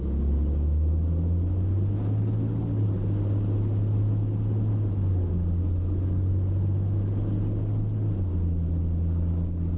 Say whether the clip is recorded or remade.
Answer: recorded